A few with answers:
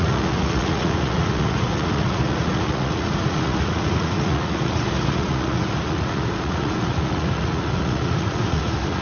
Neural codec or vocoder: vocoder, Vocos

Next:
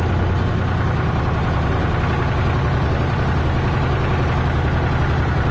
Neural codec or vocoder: none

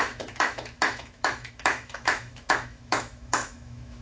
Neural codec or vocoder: autoencoder, DAC-VAE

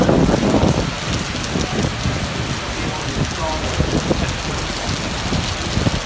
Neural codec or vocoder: none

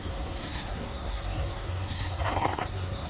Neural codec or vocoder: codec, SNAC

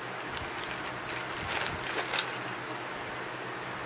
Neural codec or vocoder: none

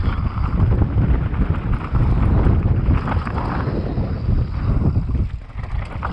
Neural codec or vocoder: none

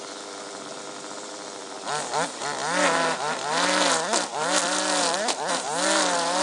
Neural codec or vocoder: none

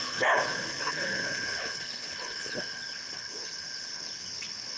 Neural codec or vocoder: codec, HILCodec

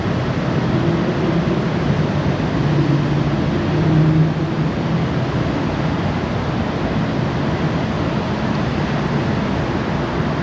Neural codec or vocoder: none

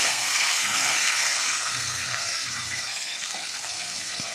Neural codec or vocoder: codec, SNAC